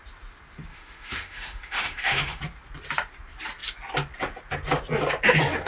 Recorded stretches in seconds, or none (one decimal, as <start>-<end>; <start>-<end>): 0.0-0.7; 2.4-5.7